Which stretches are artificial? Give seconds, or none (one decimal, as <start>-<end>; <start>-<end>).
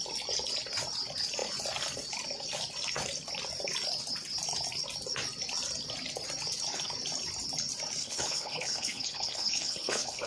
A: 8.0-10.3